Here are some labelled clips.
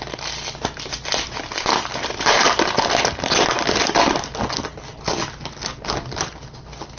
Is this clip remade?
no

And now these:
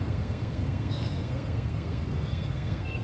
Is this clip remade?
yes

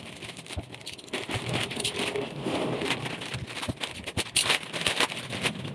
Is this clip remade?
no